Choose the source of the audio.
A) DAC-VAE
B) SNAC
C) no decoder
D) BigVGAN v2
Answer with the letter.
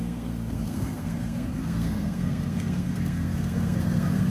B